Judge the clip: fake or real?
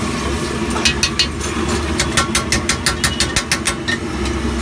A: real